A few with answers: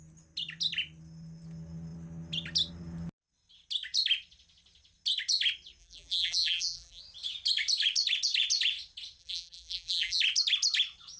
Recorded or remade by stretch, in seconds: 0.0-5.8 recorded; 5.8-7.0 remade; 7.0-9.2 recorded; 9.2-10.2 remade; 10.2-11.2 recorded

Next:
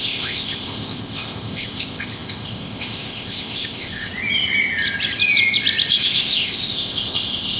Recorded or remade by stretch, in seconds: 0.0-4.1 remade; 4.1-5.9 recorded; 5.9-7.6 remade

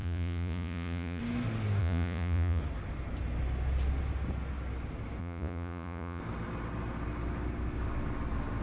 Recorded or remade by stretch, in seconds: 0.0-1.2 remade; 1.2-1.8 recorded; 1.8-2.6 remade; 2.6-5.2 recorded; 5.2-6.2 remade; 6.2-8.6 recorded

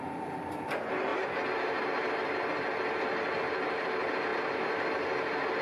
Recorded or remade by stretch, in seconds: 0.0-5.6 recorded

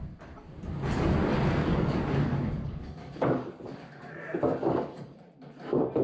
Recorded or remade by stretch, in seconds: 0.0-1.6 recorded; 1.6-5.2 remade; 5.2-6.0 recorded